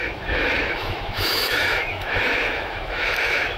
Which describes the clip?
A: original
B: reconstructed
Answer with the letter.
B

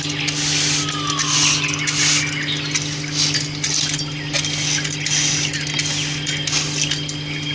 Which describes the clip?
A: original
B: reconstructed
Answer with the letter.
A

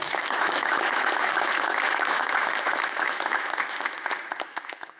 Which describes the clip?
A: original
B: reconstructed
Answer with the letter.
B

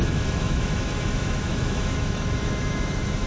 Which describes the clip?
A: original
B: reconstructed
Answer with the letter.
B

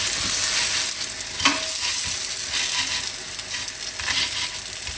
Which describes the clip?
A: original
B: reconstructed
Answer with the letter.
A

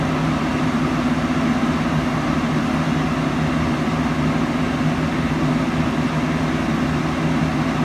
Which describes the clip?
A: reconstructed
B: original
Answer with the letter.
B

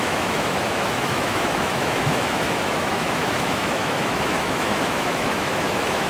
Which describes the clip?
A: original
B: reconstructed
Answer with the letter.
B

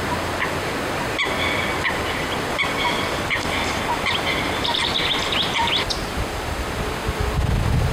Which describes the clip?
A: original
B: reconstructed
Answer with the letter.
A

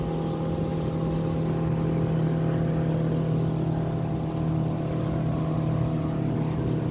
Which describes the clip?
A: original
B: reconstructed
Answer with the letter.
A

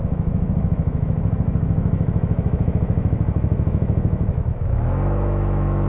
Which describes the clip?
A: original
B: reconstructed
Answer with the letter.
B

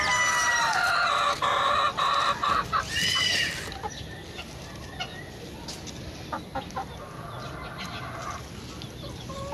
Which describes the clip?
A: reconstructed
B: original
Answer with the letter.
B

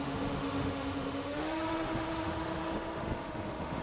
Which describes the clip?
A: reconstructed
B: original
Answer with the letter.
A